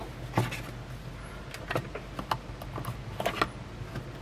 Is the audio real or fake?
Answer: real